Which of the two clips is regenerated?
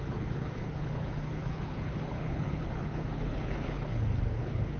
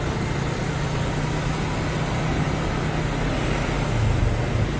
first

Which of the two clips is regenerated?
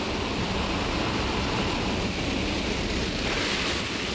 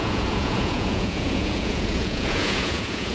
second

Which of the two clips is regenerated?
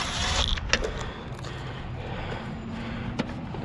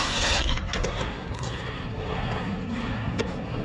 second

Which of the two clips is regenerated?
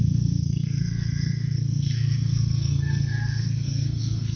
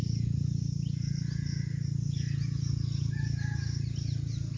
first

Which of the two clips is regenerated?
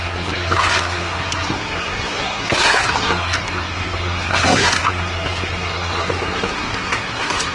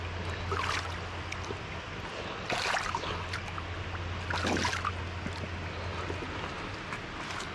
first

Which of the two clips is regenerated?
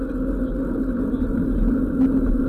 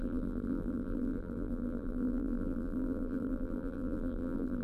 second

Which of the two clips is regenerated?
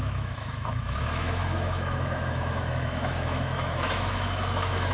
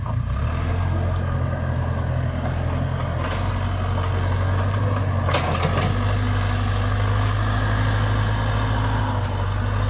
first